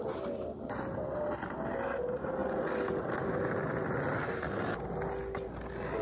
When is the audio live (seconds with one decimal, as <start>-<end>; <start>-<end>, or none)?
0.0-6.0